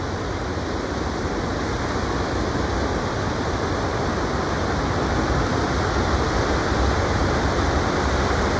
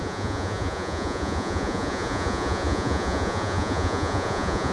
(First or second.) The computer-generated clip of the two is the second